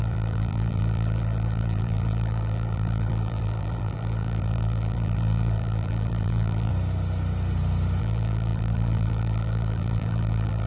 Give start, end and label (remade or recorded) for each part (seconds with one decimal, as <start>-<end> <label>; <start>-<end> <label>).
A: 0.0-6.7 remade; 6.7-8.0 recorded; 8.0-10.7 remade